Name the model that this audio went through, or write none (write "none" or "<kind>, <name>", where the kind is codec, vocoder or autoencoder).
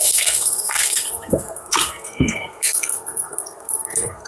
codec, SNAC